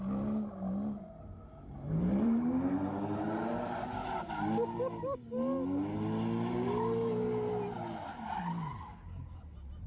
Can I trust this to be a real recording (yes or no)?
yes